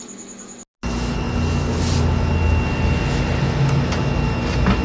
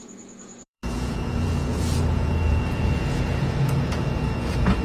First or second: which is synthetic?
second